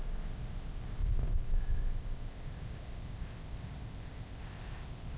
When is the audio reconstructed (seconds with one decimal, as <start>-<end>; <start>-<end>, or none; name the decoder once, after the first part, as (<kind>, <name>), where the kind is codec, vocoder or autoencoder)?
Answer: 0.0-5.2 (codec, ZipCodec)